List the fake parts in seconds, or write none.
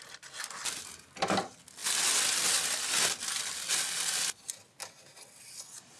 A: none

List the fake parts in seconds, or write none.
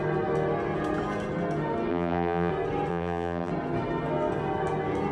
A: 1.9-2.5; 2.9-3.5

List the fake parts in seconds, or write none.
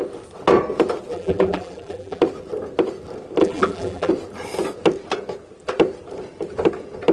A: 1.1-2.2; 3.4-4.1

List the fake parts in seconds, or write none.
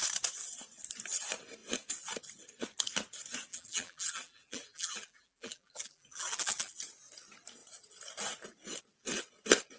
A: 3.5-6.8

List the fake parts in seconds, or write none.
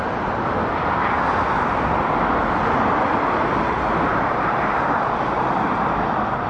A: 4.1-6.1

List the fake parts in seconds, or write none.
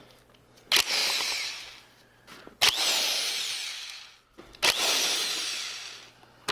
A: 1.0-1.5